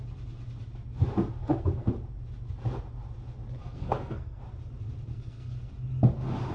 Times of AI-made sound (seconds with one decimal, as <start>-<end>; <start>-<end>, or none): 1.4-1.9; 3.6-4.4; 5.1-5.7